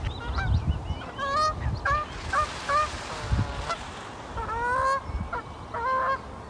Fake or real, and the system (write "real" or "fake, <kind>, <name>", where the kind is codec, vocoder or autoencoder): real